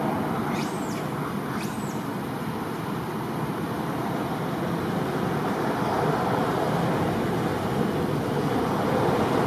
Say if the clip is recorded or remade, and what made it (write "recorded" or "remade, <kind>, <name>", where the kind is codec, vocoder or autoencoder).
recorded